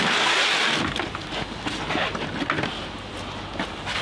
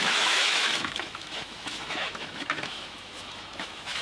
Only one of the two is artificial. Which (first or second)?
second